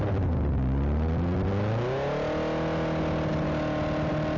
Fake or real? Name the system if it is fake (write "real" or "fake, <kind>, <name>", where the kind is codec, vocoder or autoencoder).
real